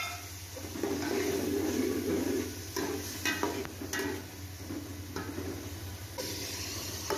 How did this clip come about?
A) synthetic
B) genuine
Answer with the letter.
B